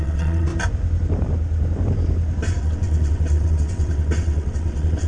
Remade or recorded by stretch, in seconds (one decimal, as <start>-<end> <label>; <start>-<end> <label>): 0.0-0.5 remade; 0.5-2.6 recorded; 2.6-5.1 remade